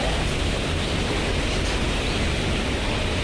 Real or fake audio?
real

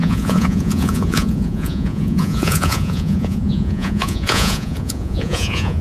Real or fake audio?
fake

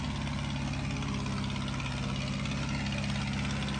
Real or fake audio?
real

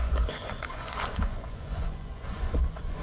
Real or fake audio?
fake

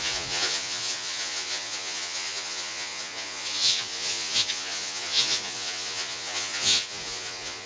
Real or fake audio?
fake